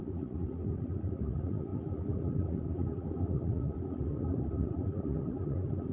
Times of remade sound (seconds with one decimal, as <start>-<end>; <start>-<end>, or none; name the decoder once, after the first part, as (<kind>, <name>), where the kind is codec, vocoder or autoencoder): 0.0-5.9 (vocoder, Vocos)